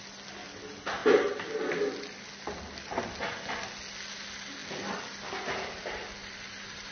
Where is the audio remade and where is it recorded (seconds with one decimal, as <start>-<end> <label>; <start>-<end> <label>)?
0.0-6.9 recorded